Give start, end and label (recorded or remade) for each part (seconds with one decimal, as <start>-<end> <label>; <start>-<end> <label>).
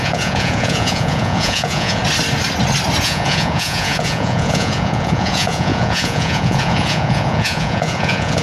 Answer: 0.0-2.0 remade; 2.0-3.0 recorded; 3.0-8.4 remade